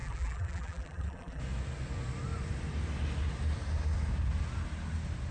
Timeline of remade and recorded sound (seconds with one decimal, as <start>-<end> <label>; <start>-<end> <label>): 0.0-1.4 remade; 1.4-5.3 recorded